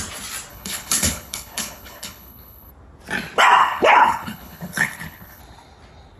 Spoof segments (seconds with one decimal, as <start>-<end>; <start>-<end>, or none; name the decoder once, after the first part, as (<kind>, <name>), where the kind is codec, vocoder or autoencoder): 0.5-2.7 (codec, HILCodec); 3.6-5.4